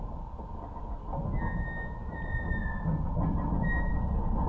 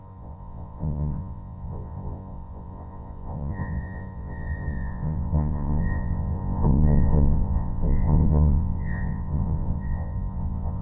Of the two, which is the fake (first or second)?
second